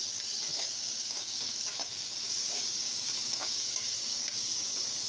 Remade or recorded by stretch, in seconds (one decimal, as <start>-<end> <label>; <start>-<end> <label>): 0.0-5.1 remade